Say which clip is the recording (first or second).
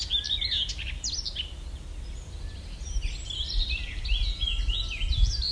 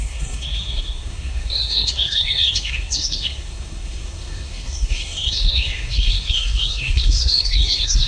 first